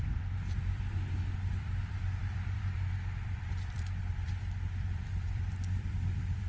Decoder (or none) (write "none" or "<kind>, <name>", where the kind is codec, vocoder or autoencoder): vocoder, BigVGAN v2